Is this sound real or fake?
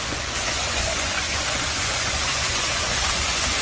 fake